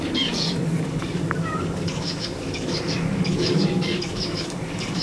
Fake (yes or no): yes